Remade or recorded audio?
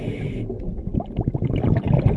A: recorded